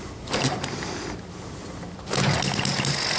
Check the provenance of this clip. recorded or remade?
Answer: recorded